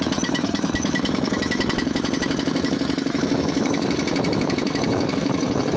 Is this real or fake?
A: fake